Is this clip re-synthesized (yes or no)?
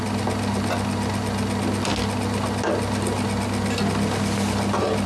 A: no